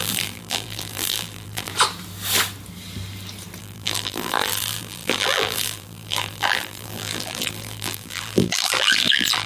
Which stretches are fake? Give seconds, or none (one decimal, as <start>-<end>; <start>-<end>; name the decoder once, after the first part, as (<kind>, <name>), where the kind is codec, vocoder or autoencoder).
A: 0.0-1.7 (vocoder, BigVGAN v2); 3.6-9.5